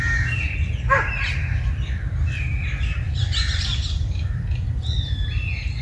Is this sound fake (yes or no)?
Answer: no